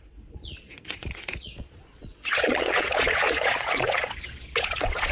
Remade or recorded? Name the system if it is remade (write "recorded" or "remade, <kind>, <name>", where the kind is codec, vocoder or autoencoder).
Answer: remade, vocoder, Vocos